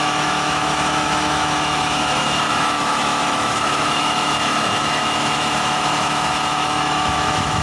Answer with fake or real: fake